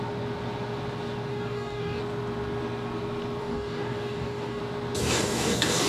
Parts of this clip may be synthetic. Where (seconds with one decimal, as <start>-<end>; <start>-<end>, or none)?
1.3-2.0; 3.4-4.6; 5.0-5.9